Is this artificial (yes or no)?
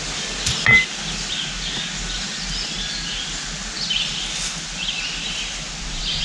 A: no